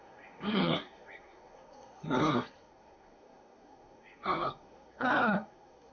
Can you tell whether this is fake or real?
fake